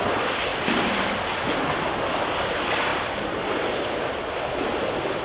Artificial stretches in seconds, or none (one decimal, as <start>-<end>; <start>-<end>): none